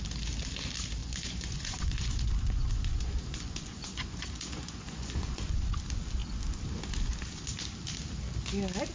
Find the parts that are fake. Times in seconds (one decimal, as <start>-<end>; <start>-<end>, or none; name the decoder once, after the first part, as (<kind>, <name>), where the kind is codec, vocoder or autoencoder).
1.0-5.7 (vocoder, Vocos)